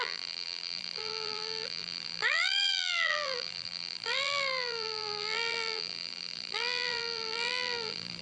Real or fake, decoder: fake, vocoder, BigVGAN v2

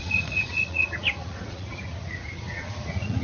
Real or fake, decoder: fake, vocoder, Vocos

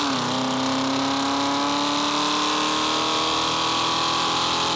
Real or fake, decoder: real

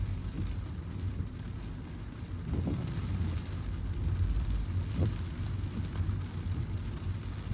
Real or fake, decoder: real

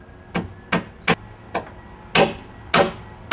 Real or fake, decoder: real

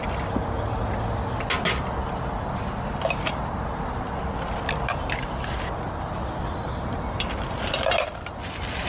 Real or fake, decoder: real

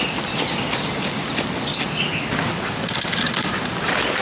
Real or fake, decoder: real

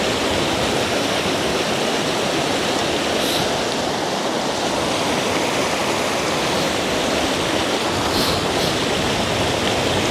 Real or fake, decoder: real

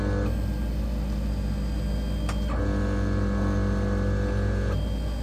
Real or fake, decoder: real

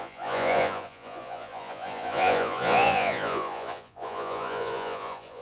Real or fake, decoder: fake, vocoder, Vocos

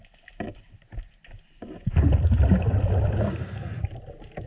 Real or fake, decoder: real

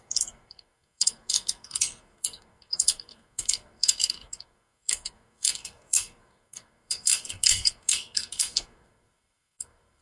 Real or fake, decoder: fake, codec, SNAC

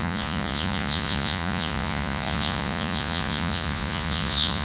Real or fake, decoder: fake, vocoder, Vocos